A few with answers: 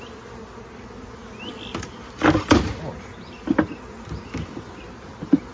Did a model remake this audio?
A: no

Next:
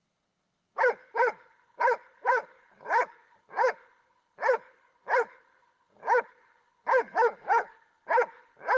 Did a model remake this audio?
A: yes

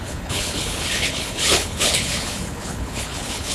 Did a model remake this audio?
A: yes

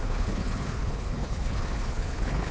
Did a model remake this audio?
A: yes